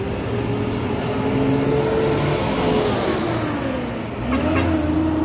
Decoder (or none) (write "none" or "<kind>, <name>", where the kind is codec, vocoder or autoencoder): none